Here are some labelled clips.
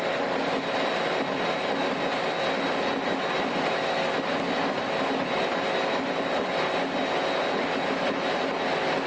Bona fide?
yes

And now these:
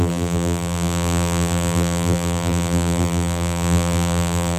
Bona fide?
no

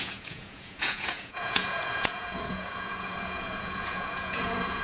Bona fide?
no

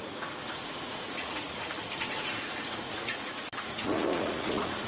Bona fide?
no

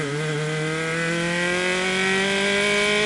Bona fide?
yes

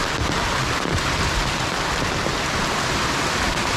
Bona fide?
yes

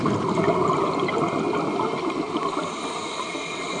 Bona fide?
yes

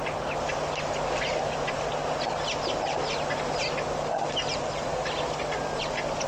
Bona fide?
yes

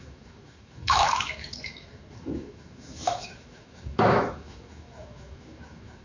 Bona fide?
no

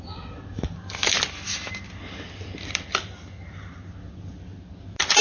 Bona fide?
yes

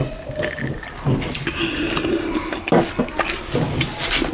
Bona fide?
yes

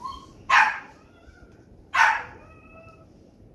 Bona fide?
yes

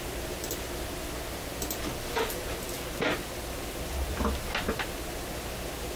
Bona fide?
yes